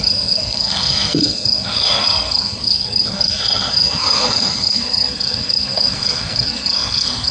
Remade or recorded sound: remade